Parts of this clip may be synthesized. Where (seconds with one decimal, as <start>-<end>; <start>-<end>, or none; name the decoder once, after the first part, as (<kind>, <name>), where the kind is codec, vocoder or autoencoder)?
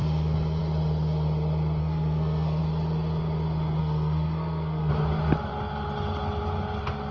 1.8-2.6 (codec, SNAC); 3.8-4.9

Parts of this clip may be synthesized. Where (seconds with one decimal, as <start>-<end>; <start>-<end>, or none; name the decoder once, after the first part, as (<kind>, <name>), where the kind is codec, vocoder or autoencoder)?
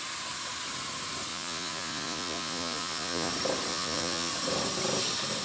1.3-3.3 (vocoder, Vocos); 3.7-4.3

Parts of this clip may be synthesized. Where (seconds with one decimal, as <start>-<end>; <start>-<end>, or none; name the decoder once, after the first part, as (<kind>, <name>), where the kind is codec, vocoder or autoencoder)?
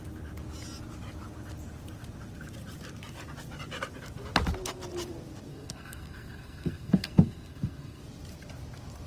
5.5-8.0 (codec, SNAC)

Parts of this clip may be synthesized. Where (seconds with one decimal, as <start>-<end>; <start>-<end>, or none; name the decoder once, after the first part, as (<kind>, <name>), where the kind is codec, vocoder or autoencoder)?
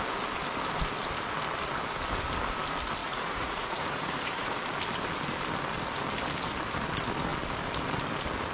3.0-4.6 (vocoder, Vocos)